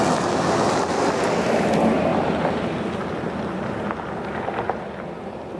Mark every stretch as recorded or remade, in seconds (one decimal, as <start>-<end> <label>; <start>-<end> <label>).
0.0-2.1 recorded; 2.1-5.6 remade